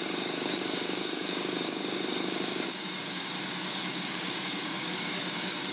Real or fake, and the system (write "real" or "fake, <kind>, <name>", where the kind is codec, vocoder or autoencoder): fake, codec, DAC